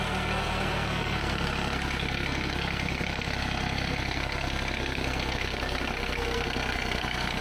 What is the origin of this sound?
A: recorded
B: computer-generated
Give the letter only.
B